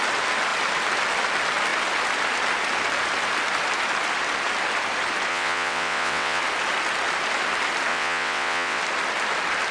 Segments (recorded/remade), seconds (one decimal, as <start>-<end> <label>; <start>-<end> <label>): 0.0-5.3 recorded; 5.3-6.4 remade; 6.4-7.9 recorded; 7.9-8.8 remade; 8.8-9.7 recorded